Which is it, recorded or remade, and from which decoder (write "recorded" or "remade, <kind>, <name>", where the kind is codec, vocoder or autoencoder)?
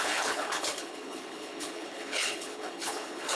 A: remade, codec, HILCodec